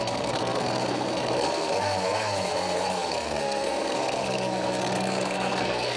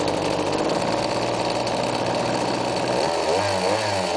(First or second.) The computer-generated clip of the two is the first